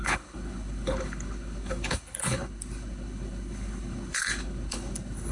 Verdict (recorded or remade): remade